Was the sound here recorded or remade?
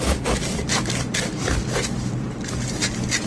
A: remade